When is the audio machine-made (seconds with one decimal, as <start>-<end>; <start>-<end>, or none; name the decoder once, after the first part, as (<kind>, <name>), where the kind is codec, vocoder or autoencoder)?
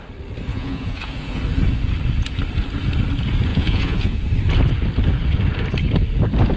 0.5-1.4 (vocoder, Vocos); 3.5-4.2